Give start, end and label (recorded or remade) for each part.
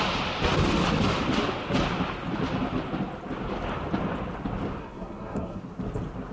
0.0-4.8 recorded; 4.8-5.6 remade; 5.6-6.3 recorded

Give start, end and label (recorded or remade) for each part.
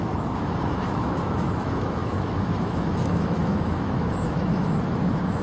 0.0-5.4 remade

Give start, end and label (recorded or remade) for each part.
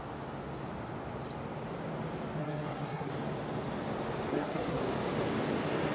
0.0-2.4 recorded; 2.4-3.1 remade; 3.1-4.3 recorded; 4.3-4.8 remade; 4.8-5.9 recorded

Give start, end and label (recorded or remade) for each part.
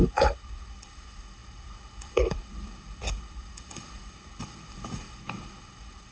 0.0-6.1 remade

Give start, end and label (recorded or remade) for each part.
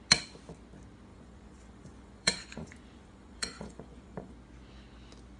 0.0-1.1 recorded; 1.1-4.3 remade; 4.3-5.4 recorded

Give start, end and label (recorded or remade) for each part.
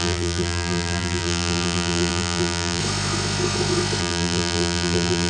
0.0-2.8 remade; 2.8-4.0 recorded; 4.0-5.3 remade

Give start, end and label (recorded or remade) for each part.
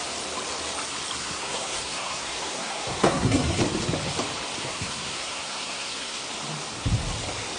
0.0-1.2 recorded; 1.2-3.6 remade; 3.6-4.6 recorded; 4.6-6.2 remade; 6.2-7.6 recorded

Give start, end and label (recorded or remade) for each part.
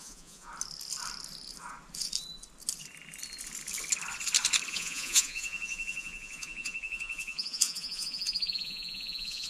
0.0-0.5 remade; 0.5-4.7 recorded; 4.7-9.5 remade